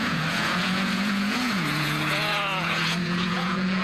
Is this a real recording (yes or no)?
no